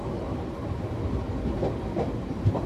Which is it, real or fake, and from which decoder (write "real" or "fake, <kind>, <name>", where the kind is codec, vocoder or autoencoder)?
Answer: real